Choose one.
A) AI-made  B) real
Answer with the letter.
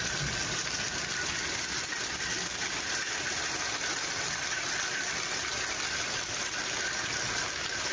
B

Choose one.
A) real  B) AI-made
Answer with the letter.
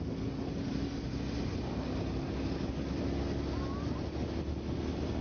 A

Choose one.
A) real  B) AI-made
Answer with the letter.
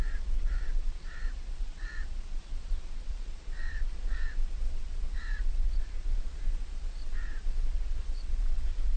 B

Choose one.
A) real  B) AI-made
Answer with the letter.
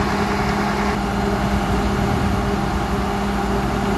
A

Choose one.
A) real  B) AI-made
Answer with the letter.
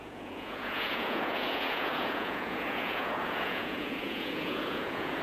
B